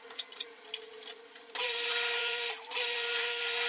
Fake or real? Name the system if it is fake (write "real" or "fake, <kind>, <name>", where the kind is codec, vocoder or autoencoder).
fake, vocoder, BigVGAN v2